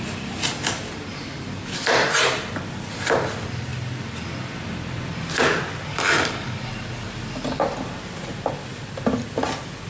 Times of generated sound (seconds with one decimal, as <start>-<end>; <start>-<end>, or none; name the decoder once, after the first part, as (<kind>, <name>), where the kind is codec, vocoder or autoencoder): 5.9-6.7 (codec, DAC)